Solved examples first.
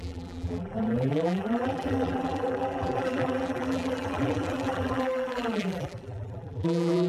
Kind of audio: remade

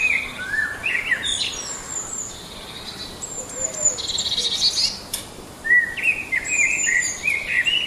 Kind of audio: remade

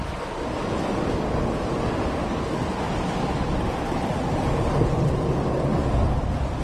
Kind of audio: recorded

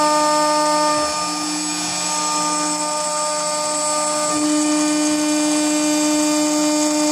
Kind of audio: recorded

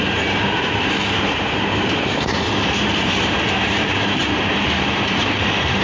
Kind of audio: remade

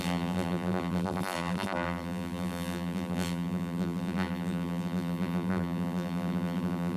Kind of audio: remade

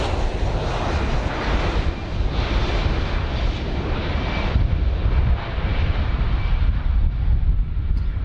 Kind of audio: recorded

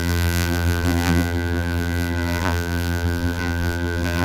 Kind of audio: remade